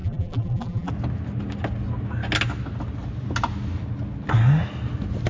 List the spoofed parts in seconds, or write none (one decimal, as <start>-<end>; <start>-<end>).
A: 0.0-0.9